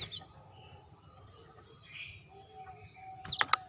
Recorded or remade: recorded